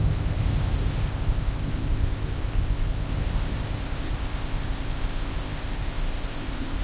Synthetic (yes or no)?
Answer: yes